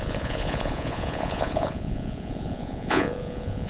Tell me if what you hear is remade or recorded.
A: remade